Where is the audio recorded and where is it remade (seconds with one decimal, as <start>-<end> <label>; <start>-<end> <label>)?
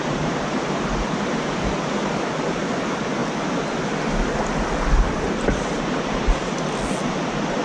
0.0-3.2 remade; 3.2-5.2 recorded; 5.2-6.4 remade; 6.4-7.6 recorded